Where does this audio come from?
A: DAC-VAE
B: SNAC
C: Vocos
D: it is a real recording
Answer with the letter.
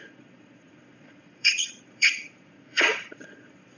C